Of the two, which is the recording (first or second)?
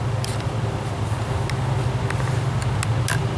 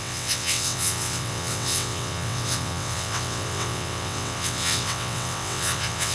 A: first